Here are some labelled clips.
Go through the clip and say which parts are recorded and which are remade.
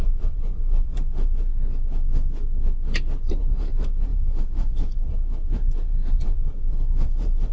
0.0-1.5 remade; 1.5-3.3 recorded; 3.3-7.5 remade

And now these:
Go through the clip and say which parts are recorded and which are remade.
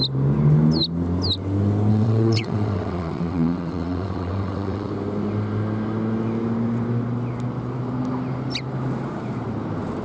0.0-1.9 recorded; 1.9-4.9 remade; 4.9-10.0 recorded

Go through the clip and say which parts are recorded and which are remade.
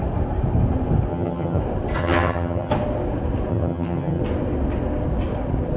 0.0-1.1 recorded; 1.1-1.6 remade; 1.6-2.0 recorded; 2.0-2.7 remade; 2.7-3.5 recorded; 3.5-4.2 remade; 4.2-5.8 recorded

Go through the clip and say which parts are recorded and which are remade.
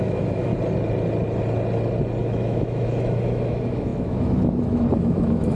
0.0-0.5 remade; 0.5-2.2 recorded; 2.2-5.5 remade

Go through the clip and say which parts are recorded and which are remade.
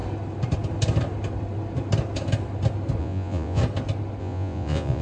0.0-3.0 recorded; 3.0-3.6 remade; 3.6-4.2 recorded; 4.2-5.0 remade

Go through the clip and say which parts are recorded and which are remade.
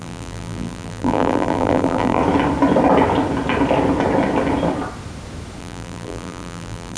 0.0-2.2 remade; 2.2-5.6 recorded; 5.6-7.0 remade